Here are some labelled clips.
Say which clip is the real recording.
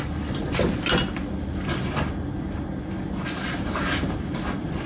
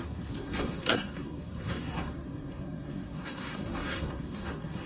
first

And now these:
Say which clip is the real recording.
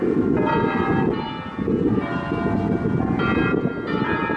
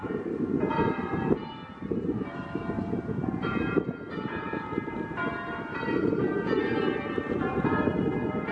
first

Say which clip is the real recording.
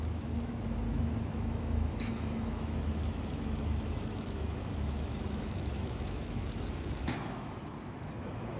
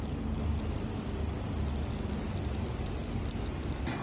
second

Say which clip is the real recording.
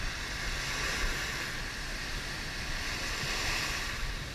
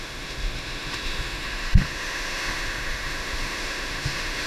first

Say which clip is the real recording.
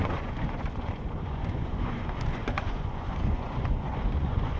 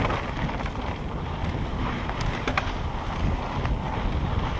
second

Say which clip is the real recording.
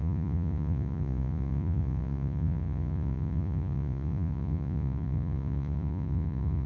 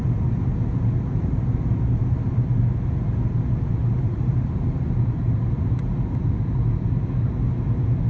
second